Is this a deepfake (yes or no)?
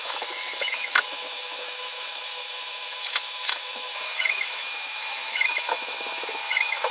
yes